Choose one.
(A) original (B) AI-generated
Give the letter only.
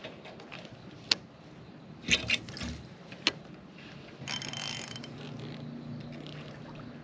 A